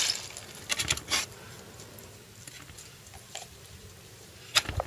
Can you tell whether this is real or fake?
real